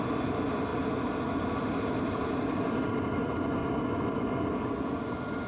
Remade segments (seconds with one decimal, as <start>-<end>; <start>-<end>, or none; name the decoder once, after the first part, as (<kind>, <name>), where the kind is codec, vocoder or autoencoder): 0.0-3.6 (vocoder, BigVGAN v2); 4.9-5.5